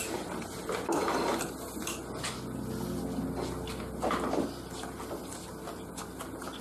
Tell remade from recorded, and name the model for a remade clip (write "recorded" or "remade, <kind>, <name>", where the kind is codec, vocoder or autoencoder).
recorded